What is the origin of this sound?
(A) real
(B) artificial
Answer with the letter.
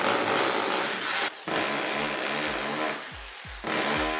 A